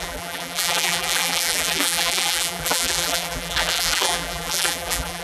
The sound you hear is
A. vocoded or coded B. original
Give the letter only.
A